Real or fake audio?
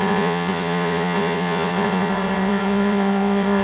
fake